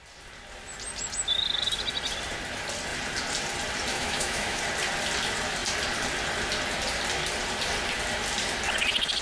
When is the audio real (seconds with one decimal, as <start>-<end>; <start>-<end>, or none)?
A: 0.0-3.9; 4.6-9.2